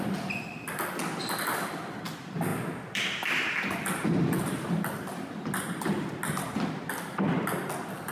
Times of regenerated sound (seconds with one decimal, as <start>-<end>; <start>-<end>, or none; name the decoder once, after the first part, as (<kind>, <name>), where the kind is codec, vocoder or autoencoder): none